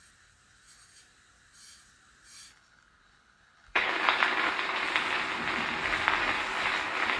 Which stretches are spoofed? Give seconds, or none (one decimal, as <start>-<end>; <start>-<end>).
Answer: 2.5-3.9